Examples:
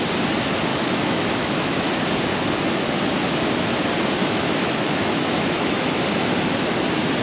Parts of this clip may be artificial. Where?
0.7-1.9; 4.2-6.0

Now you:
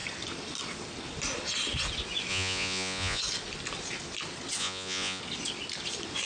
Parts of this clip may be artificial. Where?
2.3-3.2; 4.6-5.2

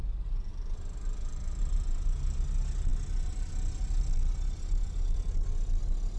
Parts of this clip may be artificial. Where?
none

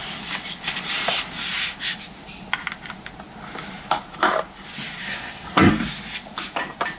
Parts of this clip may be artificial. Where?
5.0-5.7

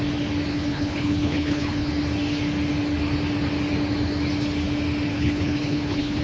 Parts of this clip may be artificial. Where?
0.5-1.9; 5.1-6.2

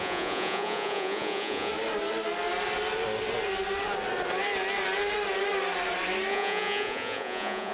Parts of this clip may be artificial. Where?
0.0-1.7; 6.3-7.7

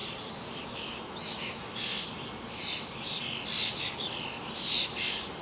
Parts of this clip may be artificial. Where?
0.6-1.9